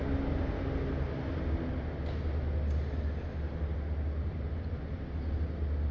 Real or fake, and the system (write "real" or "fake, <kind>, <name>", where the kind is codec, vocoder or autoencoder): real